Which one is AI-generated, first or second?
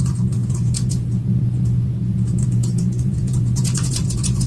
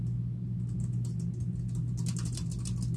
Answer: first